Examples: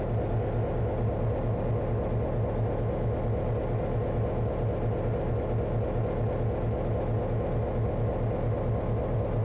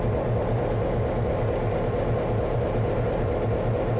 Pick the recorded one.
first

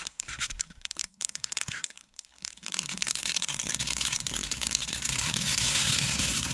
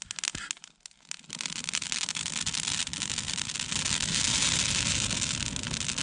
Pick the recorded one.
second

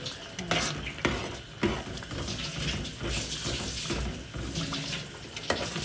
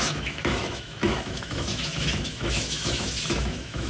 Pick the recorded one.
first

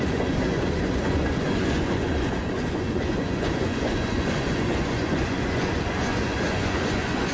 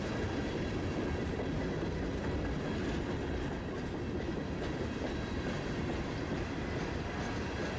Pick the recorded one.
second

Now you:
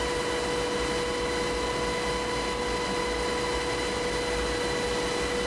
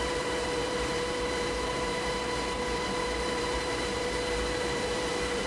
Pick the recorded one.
first